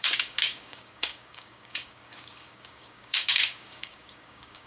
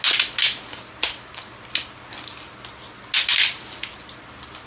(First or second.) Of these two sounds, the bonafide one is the second